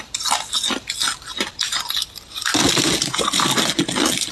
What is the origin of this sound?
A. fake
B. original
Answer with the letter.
A